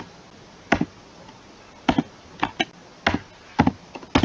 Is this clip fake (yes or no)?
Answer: no